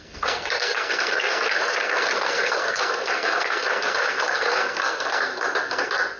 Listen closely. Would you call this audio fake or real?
fake